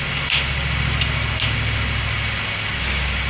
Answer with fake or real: real